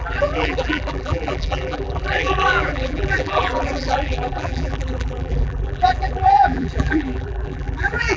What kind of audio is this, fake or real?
fake